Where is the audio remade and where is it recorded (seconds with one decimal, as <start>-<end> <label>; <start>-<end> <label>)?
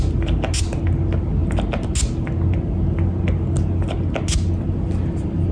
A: 0.0-5.5 recorded